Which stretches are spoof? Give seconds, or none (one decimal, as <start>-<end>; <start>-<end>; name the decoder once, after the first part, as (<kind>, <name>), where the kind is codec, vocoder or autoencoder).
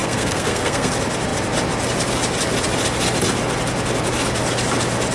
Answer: 0.0-0.9 (codec, SNAC)